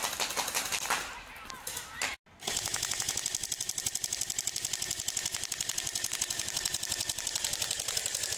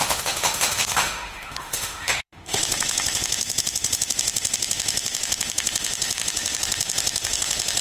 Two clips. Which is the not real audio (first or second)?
second